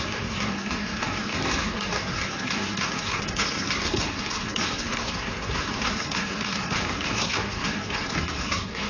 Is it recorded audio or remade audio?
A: remade